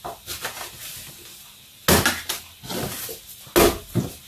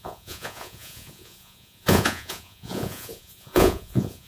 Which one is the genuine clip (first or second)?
first